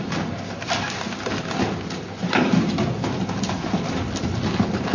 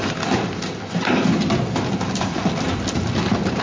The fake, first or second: second